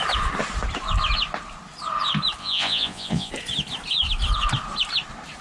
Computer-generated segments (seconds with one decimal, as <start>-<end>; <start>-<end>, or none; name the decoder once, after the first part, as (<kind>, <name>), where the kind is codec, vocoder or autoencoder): 2.4-3.3 (vocoder, Vocos)